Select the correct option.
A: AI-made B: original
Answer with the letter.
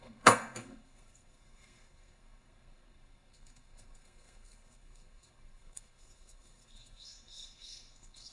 A